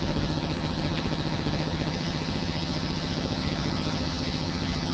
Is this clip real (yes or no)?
no